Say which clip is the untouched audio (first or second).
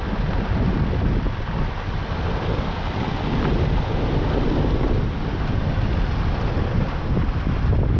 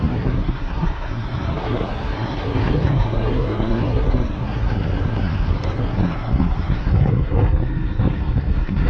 first